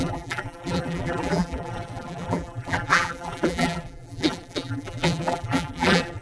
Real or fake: fake